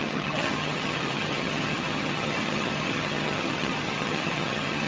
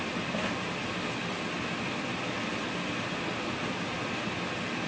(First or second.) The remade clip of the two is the first